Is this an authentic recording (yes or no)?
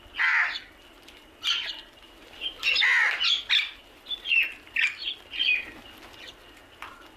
yes